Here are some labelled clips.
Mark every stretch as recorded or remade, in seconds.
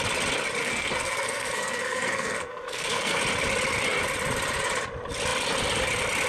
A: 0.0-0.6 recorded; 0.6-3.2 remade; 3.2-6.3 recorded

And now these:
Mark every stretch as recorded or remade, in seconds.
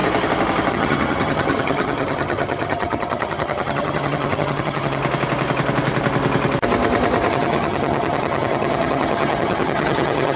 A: 0.0-0.7 recorded; 0.7-5.0 remade; 5.0-7.3 recorded; 7.3-10.4 remade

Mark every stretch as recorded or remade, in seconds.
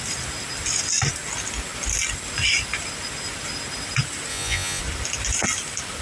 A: 0.0-4.3 recorded; 4.3-4.8 remade; 4.8-6.0 recorded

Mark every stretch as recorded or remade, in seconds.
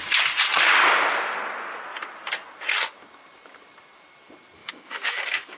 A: 0.0-4.6 recorded; 4.6-5.6 remade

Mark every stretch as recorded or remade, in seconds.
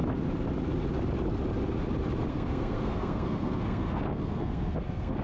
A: 0.0-2.3 recorded; 2.3-5.2 remade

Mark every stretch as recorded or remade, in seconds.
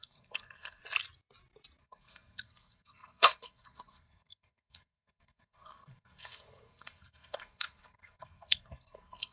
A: 0.0-0.8 remade; 0.8-1.8 recorded; 1.8-9.3 remade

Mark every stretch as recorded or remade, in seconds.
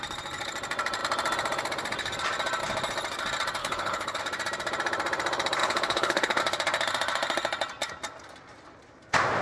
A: 0.0-3.6 recorded; 3.6-4.2 remade; 4.2-5.6 recorded; 5.6-6.4 remade; 6.4-9.4 recorded